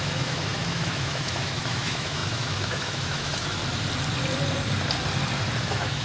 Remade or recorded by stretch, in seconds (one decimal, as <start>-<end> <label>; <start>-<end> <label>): 0.0-3.6 remade; 3.6-5.6 recorded; 5.6-6.0 remade